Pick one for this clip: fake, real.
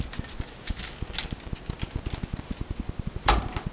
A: real